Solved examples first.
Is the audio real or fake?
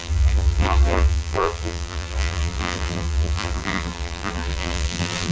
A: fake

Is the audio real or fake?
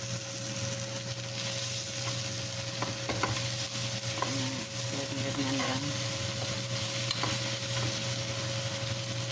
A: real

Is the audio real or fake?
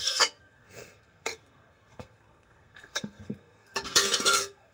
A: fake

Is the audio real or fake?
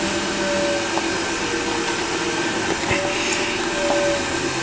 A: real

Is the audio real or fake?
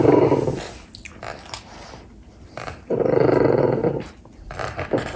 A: real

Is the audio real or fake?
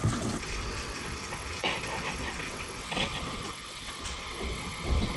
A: fake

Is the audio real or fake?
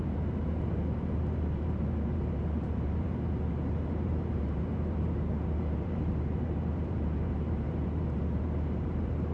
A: fake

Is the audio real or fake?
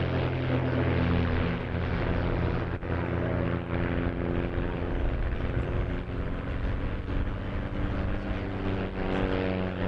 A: real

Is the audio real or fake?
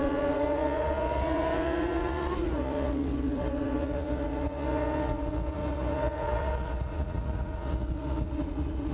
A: fake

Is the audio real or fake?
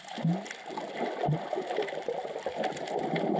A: real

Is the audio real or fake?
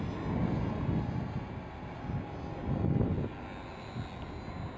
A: real